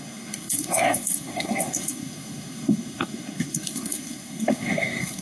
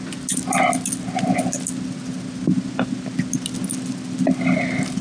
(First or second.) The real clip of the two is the second